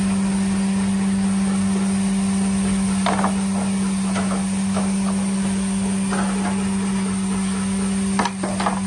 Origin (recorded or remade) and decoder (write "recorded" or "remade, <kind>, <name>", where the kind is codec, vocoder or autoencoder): recorded